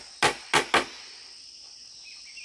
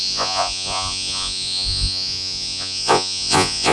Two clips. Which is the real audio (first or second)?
first